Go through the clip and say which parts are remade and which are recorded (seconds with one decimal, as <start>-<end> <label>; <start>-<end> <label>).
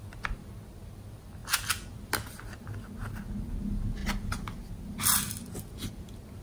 0.0-6.4 recorded